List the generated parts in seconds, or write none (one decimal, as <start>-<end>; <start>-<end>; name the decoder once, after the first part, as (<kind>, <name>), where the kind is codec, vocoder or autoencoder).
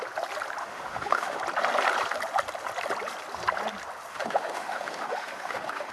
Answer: 0.6-1.4 (autoencoder, DAC-VAE); 4.1-5.9